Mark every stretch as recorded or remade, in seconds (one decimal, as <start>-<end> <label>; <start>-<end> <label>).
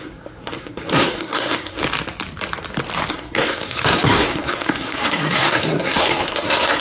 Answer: 0.0-1.8 remade; 1.8-3.1 recorded; 3.1-6.8 remade